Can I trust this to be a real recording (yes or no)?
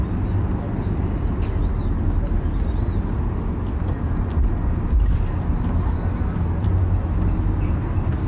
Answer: yes